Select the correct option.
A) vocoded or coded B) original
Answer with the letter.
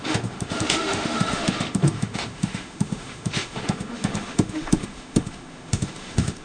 A